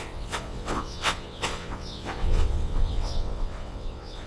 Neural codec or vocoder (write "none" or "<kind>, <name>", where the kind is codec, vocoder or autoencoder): vocoder, WaveNeXt